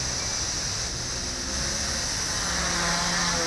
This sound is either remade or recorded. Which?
recorded